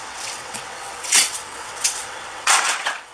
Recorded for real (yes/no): no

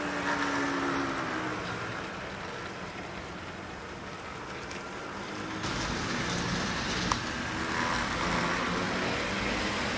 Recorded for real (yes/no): yes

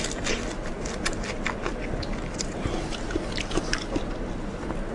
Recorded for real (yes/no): yes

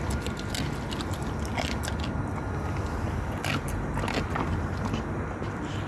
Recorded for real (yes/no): yes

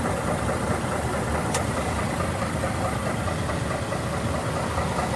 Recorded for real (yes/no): yes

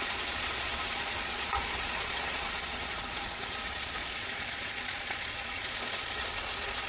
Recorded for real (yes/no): no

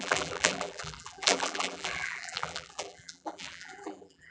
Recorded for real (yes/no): no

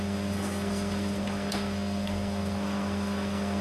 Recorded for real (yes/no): no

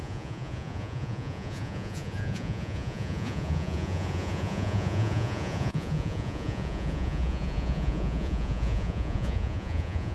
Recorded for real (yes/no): no